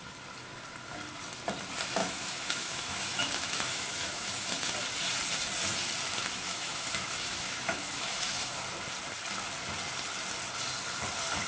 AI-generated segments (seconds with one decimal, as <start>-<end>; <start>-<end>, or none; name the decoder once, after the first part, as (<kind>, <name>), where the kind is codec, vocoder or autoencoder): 2.0-4.7 (autoencoder, DAC-VAE); 6.2-8.6